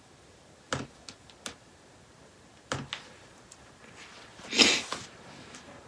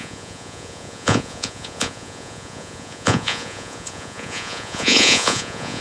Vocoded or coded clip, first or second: second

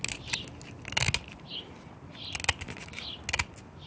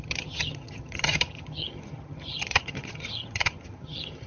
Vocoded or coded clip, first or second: second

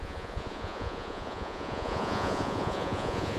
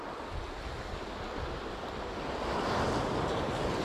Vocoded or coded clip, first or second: first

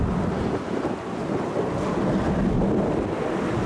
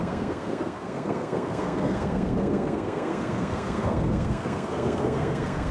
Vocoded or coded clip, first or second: second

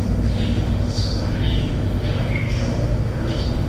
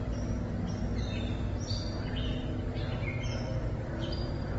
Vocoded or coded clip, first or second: first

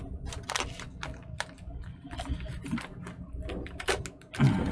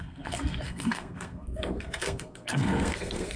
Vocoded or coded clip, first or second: second